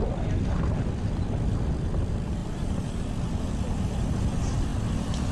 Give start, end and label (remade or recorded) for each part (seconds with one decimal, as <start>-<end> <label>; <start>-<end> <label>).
0.0-2.4 recorded; 2.4-4.2 remade; 4.2-5.3 recorded